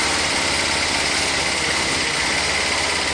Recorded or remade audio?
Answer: recorded